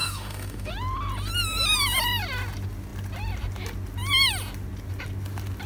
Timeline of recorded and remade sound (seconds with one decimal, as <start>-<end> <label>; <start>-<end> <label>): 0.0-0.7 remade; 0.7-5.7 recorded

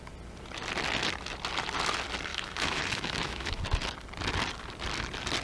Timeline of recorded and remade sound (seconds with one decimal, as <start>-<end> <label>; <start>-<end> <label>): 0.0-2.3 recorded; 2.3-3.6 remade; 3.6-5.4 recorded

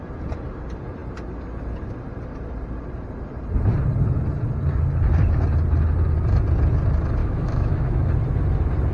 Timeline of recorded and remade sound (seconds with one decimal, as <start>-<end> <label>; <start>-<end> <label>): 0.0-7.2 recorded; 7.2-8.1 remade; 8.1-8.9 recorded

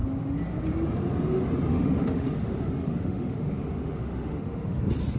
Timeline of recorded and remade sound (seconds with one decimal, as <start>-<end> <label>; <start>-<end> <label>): 0.0-1.7 recorded; 1.7-4.8 remade; 4.8-5.2 recorded